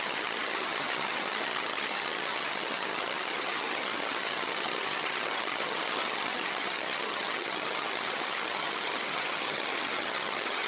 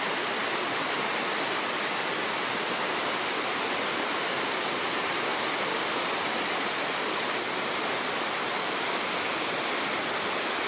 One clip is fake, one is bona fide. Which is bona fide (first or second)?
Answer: second